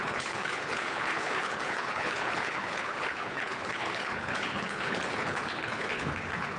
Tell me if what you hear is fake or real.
fake